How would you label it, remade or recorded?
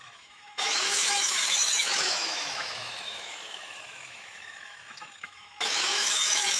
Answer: remade